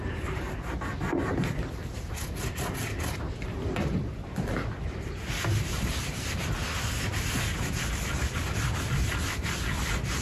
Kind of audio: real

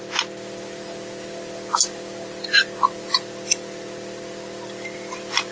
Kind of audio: real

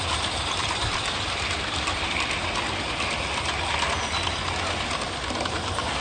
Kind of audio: real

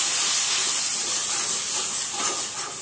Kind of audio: real